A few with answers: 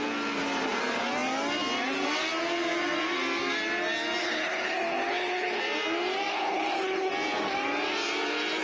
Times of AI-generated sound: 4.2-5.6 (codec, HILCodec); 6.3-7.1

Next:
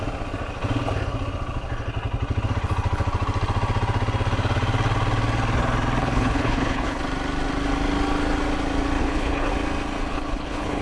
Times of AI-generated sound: 6.0-7.0 (codec, HILCodec); 9.0-9.5; 10.1-10.8

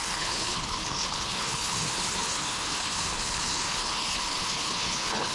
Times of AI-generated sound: 0.0-5.3 (codec, HILCodec)

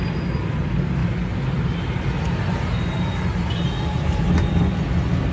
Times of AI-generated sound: none

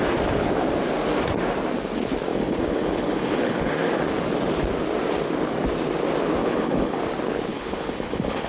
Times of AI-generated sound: 2.3-3.7 (codec, HILCodec); 6.4-7.0; 7.5-8.5

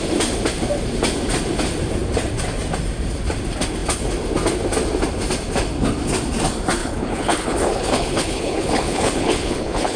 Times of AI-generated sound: 6.8-10.0 (codec, HILCodec)

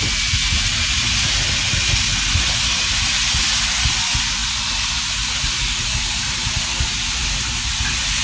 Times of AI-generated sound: none

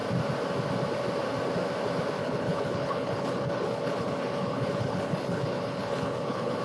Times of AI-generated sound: 2.2-6.6 (codec, HILCodec)